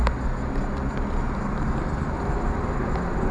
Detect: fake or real real